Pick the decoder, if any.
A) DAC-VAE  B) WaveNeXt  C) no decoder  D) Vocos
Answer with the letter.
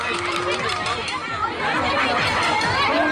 C